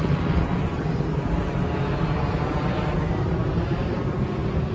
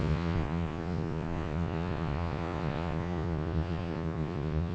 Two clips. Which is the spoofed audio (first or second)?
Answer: second